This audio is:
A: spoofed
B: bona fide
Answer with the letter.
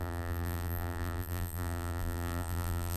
A